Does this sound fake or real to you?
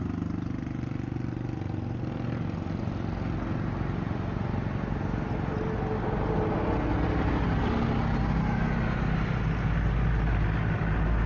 real